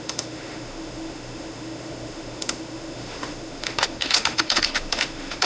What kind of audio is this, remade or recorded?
remade